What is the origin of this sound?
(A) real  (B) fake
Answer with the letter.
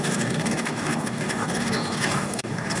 B